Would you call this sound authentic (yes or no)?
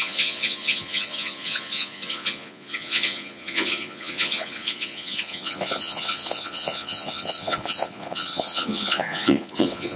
no